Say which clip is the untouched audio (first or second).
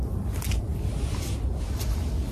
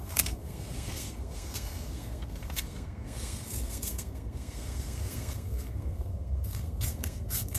first